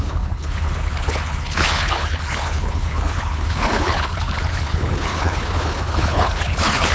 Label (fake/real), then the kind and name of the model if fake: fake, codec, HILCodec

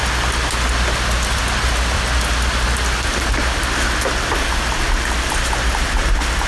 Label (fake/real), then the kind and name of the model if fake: real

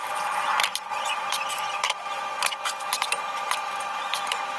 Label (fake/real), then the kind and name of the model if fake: real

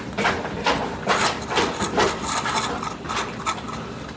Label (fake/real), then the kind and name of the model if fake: real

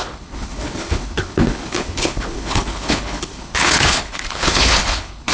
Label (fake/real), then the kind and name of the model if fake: fake, codec, HILCodec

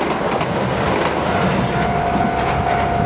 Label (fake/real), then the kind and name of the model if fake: real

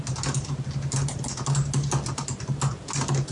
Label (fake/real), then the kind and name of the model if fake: real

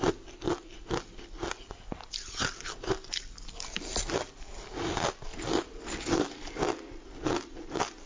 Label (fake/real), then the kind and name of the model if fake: real